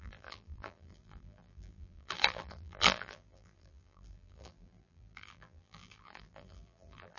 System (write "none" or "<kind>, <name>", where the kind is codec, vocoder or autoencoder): vocoder, BigVGAN v2